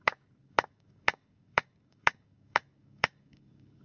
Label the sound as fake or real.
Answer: fake